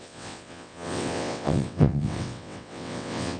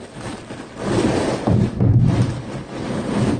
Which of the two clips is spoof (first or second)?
first